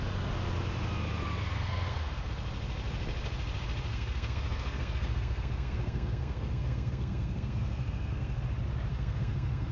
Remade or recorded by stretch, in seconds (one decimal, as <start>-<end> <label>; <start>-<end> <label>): 0.0-1.5 recorded; 1.5-2.3 remade; 2.3-3.9 recorded; 3.9-8.4 remade; 8.4-8.9 recorded; 8.9-9.7 remade